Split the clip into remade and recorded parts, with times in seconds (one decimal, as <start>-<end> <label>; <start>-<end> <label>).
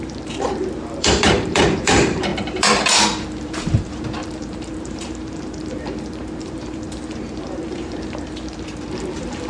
0.0-9.5 remade